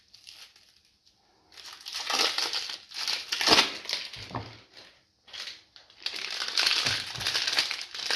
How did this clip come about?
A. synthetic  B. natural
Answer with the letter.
B